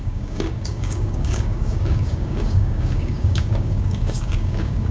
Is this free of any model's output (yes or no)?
no